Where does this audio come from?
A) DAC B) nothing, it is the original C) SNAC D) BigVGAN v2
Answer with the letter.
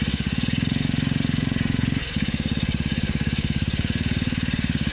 A